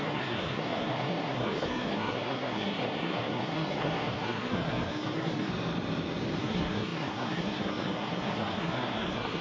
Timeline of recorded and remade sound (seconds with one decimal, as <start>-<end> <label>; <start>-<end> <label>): 0.0-5.5 remade; 5.5-6.4 recorded; 6.4-9.4 remade

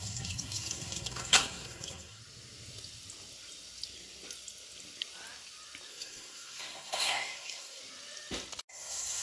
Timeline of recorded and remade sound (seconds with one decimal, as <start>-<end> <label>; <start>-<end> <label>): 0.0-2.2 remade; 2.2-5.9 recorded; 5.9-7.8 remade; 7.8-8.7 recorded; 8.7-9.2 remade

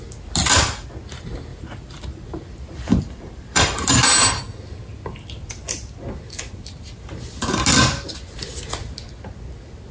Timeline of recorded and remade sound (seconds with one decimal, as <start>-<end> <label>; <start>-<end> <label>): 0.0-1.5 recorded; 1.5-4.4 remade; 4.4-9.9 recorded

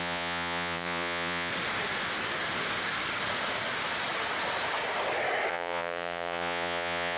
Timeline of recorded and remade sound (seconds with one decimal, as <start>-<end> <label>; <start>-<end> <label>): 0.0-1.5 remade; 1.5-5.5 recorded; 5.5-7.2 remade

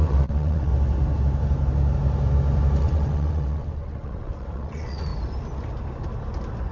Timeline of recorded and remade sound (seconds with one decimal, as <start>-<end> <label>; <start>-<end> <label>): 0.0-0.7 remade; 0.7-2.8 recorded; 2.8-5.1 remade; 5.1-6.7 recorded

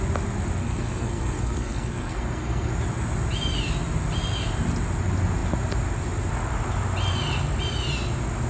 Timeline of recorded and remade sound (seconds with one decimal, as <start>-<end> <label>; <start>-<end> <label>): 0.0-0.6 recorded; 0.6-2.7 remade; 2.7-8.5 recorded

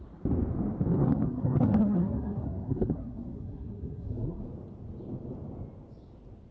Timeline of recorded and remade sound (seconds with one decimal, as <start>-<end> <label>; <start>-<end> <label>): 0.0-1.0 recorded; 1.0-4.4 remade; 4.4-6.5 recorded

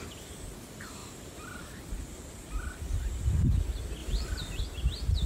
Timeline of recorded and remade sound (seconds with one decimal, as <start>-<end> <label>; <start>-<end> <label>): 0.0-5.3 recorded